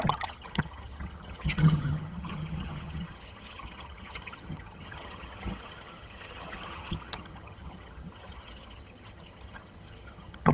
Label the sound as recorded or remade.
remade